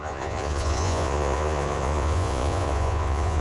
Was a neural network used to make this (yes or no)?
yes